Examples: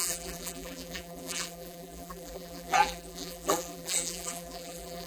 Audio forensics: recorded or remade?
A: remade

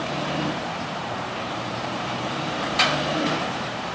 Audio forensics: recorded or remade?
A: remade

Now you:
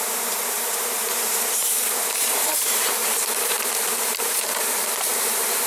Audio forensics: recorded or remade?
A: remade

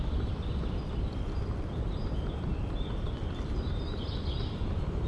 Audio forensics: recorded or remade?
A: remade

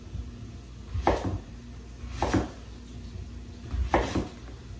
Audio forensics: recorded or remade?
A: recorded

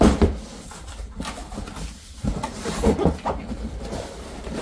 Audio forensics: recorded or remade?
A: remade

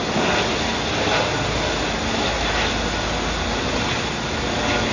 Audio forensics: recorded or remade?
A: recorded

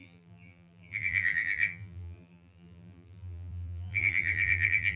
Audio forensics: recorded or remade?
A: remade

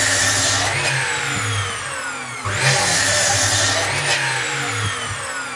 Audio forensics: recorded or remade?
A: recorded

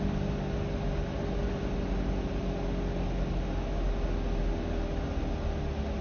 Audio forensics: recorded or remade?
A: recorded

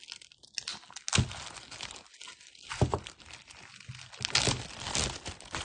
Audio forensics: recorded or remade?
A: recorded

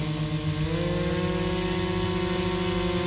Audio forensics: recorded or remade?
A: recorded